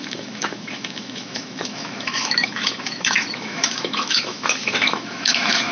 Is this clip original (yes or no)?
no